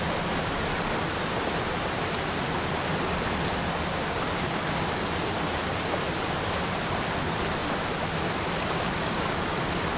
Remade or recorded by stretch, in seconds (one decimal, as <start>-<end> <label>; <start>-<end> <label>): 0.0-10.0 recorded